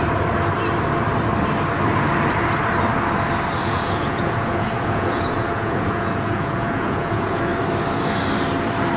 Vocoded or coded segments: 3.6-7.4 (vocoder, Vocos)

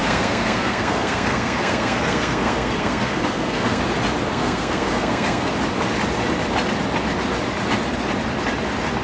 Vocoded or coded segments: 0.0-3.8 (codec, SNAC); 4.3-5.5